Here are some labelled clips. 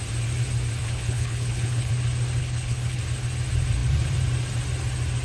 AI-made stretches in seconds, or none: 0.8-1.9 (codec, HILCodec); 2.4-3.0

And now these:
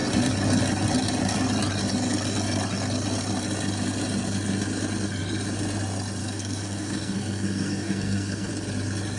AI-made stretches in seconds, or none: 6.2-8.5 (codec, SNAC)

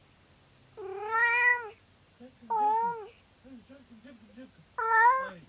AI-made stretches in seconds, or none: none

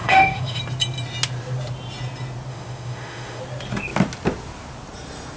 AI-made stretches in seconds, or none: 0.0-0.6 (autoencoder, DAC-VAE); 2.5-3.4

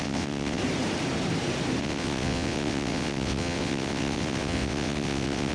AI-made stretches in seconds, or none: 0.0-0.6 (vocoder, WaveNeXt); 1.8-5.5

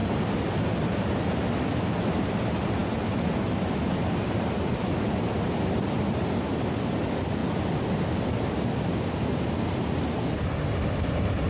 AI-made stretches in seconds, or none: none

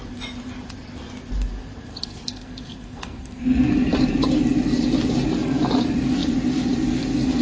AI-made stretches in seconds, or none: 1.9-3.7 (codec, SNAC)